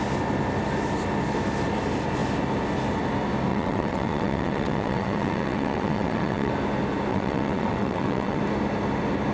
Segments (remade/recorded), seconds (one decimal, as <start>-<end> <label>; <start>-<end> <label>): 0.0-3.5 recorded; 3.5-6.5 remade; 6.5-7.1 recorded; 7.1-8.4 remade; 8.4-9.3 recorded